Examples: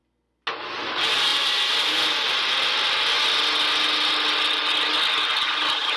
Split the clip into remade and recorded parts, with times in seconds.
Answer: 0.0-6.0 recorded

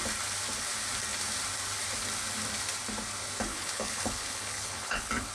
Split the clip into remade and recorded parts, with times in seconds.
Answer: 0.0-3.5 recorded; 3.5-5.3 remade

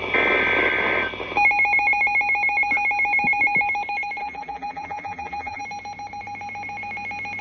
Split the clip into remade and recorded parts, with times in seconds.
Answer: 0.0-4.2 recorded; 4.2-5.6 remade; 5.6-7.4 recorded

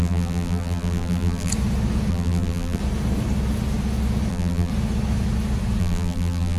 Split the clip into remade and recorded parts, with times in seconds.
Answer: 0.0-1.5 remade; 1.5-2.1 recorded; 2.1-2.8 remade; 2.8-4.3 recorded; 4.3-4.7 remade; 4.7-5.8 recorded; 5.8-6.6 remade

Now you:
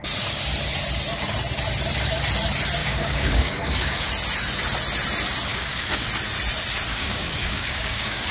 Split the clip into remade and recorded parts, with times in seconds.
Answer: 0.0-2.8 recorded; 2.8-4.1 remade; 4.1-5.5 recorded; 5.5-6.1 remade; 6.1-6.9 recorded; 6.9-8.3 remade